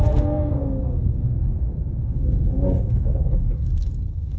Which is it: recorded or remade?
remade